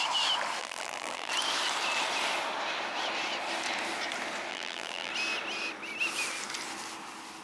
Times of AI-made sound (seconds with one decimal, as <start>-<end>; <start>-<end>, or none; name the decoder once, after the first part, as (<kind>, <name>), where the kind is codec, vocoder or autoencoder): 0.6-1.3 (vocoder, BigVGAN v2); 4.5-5.1